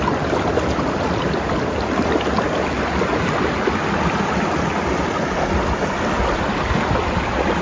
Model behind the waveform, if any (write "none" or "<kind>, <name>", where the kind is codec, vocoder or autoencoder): none